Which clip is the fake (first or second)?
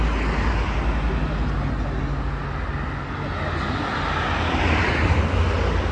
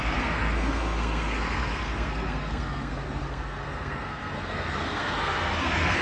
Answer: second